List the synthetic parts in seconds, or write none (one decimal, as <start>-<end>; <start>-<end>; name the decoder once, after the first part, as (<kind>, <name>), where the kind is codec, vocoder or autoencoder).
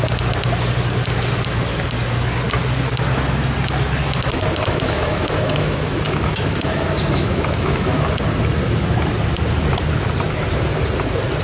4.0-8.1 (autoencoder, DAC-VAE)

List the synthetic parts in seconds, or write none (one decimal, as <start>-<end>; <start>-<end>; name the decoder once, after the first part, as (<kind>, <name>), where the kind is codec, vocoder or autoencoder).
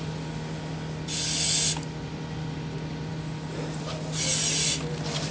none